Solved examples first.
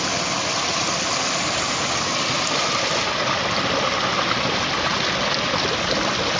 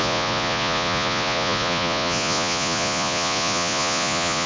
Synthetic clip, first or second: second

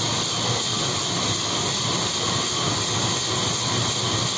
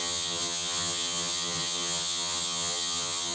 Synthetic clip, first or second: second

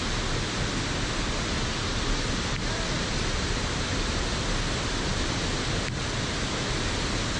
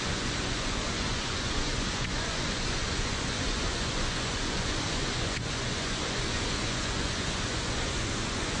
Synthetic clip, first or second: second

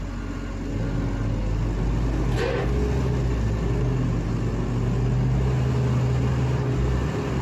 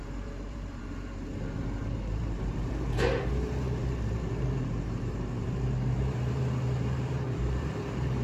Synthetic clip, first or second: second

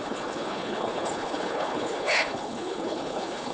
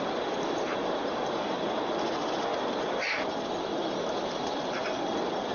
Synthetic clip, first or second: first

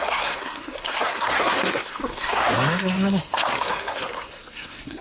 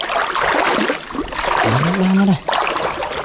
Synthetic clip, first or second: first